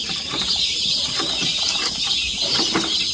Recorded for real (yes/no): no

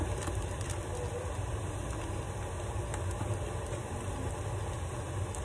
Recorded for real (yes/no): yes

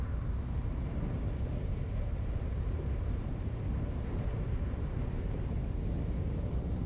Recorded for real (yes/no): no